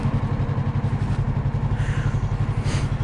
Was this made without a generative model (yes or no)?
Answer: yes